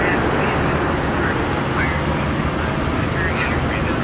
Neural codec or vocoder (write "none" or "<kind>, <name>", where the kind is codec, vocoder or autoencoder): none